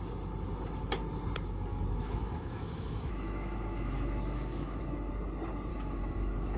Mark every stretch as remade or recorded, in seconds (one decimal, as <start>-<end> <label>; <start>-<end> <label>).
0.0-1.7 recorded; 1.7-5.1 remade; 5.1-5.7 recorded; 5.7-6.6 remade